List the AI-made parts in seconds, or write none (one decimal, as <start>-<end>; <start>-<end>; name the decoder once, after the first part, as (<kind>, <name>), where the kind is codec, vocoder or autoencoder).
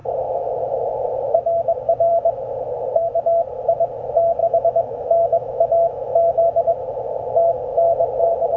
4.4-6.4 (autoencoder, DAC-VAE)